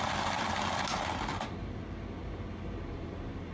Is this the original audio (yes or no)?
yes